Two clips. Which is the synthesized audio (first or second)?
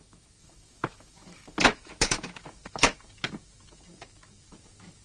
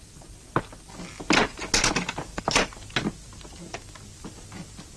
first